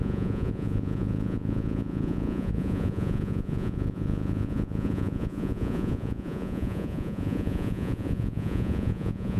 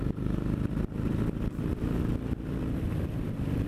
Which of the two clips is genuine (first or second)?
second